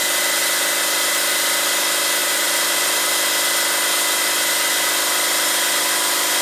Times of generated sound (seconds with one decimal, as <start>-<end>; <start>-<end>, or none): 2.2-3.0